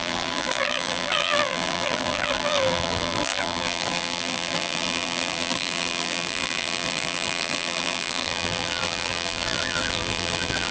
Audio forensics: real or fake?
fake